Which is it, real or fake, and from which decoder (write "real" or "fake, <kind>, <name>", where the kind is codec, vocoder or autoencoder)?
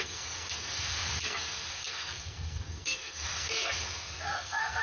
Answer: fake, codec, SNAC